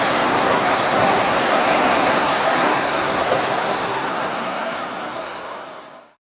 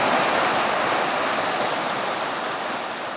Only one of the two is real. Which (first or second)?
second